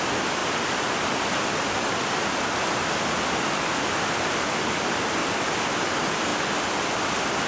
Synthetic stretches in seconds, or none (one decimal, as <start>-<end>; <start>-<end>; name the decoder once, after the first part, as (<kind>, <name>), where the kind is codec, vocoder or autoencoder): none